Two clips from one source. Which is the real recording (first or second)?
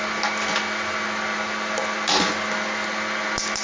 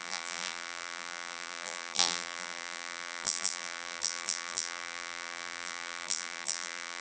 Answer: first